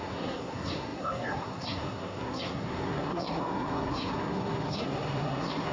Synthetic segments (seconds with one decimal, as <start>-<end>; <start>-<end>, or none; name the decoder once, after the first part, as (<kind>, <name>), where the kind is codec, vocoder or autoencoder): 0.0-5.7 (codec, SNAC)

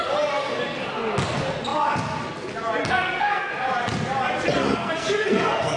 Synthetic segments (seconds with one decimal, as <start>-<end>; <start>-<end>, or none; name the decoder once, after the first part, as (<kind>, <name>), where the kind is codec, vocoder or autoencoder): 2.8-3.5 (codec, SNAC); 4.8-5.8

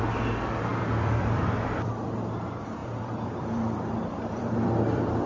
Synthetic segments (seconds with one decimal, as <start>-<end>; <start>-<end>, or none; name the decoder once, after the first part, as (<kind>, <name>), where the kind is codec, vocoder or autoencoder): 0.7-1.9 (vocoder, BigVGAN v2); 2.8-5.3

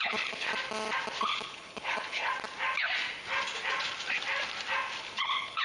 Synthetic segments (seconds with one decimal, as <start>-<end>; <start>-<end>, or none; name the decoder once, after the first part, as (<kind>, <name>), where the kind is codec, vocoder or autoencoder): 0.0-0.5 (codec, HILCodec); 1.2-2.3; 5.0-5.6

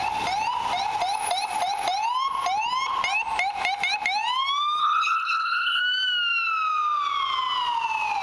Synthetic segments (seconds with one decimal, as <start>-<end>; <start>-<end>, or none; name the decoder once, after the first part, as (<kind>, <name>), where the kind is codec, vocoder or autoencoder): 4.8-5.8 (codec, HILCodec)

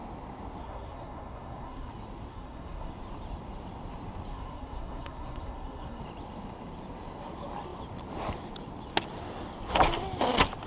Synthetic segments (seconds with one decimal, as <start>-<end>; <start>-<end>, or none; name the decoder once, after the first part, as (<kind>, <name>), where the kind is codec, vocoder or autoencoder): 0.6-1.9 (codec, SNAC); 2.3-2.9; 4.3-6.0

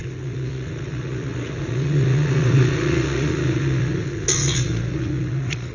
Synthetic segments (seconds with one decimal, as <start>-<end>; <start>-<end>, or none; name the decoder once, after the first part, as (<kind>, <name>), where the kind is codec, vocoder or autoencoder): 0.0-5.7 (vocoder, Vocos)